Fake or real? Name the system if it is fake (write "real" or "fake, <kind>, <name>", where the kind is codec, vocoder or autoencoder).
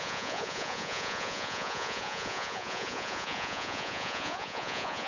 fake, vocoder, Vocos